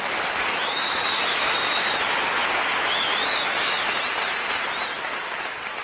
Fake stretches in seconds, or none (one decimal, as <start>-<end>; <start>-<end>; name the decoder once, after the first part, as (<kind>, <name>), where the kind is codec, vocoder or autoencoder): 0.5-4.0 (autoencoder, DAC-VAE)